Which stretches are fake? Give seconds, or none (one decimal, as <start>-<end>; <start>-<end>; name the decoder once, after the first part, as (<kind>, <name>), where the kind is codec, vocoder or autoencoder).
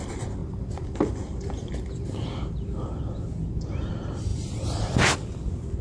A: none